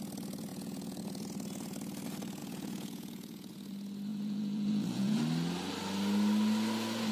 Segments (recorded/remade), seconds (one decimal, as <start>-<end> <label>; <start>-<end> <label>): 0.0-0.5 recorded; 0.5-1.0 remade; 1.0-2.4 recorded; 2.4-3.5 remade; 3.5-4.1 recorded; 4.1-5.2 remade; 5.2-7.1 recorded